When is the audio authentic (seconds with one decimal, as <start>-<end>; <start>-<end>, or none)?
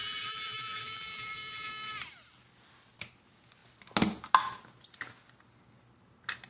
1.7-6.5